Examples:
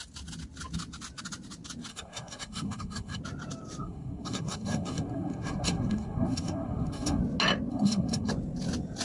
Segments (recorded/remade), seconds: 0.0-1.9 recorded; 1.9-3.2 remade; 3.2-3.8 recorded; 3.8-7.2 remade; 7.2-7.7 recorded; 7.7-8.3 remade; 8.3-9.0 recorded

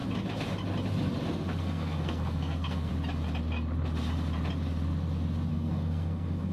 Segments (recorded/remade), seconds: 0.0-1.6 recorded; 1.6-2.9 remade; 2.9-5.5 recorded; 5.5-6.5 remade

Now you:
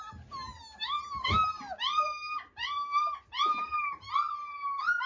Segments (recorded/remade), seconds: 0.0-5.1 recorded

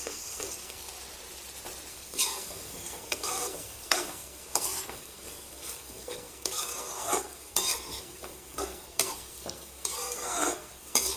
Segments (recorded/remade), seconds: 0.0-0.9 remade; 0.9-1.9 recorded; 1.9-11.2 remade

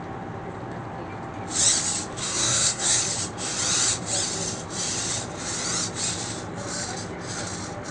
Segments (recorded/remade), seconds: 0.0-2.2 recorded; 2.2-3.0 remade; 3.0-7.9 recorded

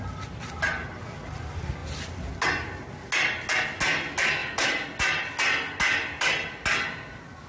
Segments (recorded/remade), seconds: 0.0-7.5 recorded

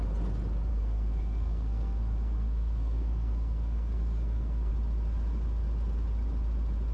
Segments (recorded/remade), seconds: 0.0-0.7 recorded; 0.7-4.7 remade; 4.7-6.9 recorded